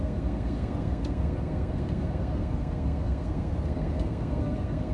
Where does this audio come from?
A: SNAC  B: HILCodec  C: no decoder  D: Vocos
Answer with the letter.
A